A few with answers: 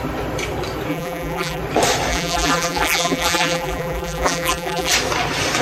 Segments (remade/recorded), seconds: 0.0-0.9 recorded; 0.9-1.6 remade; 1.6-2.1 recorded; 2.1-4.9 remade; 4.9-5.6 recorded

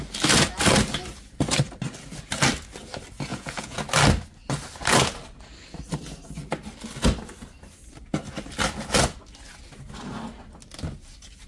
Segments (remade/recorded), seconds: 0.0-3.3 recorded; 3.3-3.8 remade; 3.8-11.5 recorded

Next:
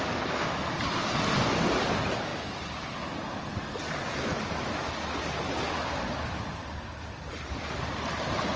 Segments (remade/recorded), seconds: 0.0-8.6 recorded